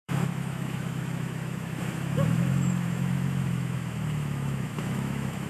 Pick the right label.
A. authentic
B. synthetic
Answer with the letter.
B